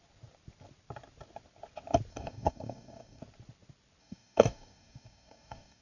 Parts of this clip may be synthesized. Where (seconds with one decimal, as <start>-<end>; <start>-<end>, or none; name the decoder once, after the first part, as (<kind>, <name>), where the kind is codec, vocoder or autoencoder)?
2.1-3.2 (codec, DAC); 4.0-5.8